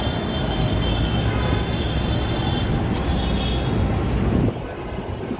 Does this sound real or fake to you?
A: real